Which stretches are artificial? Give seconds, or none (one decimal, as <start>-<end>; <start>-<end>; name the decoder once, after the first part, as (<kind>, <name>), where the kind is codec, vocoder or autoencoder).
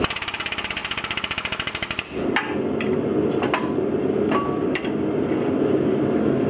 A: none